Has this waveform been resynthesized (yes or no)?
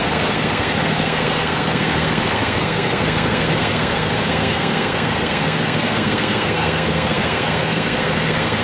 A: yes